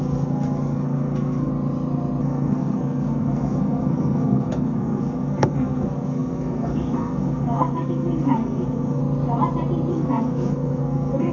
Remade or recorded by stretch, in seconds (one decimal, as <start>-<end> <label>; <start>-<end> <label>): 0.0-1.5 remade; 1.5-2.2 recorded; 2.2-9.0 remade; 9.0-9.9 recorded; 9.9-11.3 remade